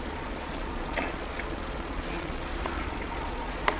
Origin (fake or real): fake